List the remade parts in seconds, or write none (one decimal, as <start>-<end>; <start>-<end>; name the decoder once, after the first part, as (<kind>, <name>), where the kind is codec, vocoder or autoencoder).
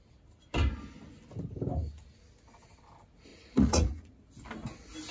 3.3-4.2 (vocoder, Vocos)